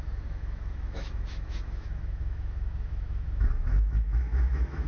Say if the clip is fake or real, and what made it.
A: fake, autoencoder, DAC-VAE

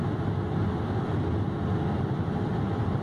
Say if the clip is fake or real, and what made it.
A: real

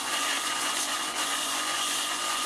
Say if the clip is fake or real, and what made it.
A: fake, vocoder, Vocos